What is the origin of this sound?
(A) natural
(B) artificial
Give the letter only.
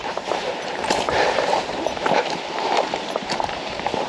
B